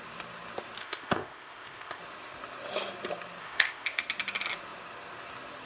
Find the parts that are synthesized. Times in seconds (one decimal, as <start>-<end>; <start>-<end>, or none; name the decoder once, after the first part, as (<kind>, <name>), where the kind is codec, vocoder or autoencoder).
0.8-2.0 (codec, ZipCodec); 3.4-4.0